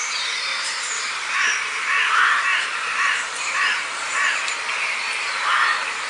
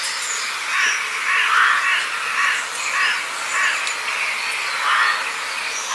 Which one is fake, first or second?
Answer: first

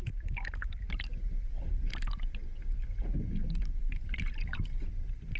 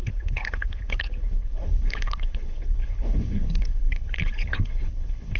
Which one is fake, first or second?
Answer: second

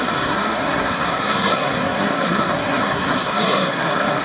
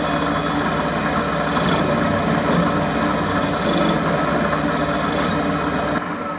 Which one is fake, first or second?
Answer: first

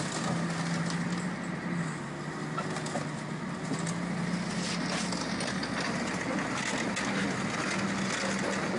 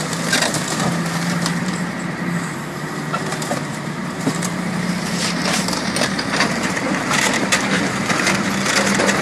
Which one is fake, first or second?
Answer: second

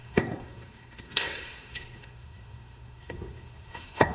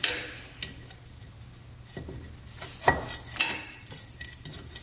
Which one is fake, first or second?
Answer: first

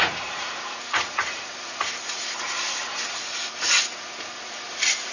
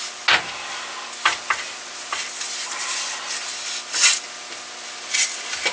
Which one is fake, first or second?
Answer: first